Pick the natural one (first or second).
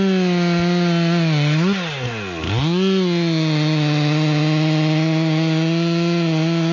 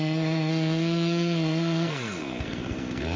first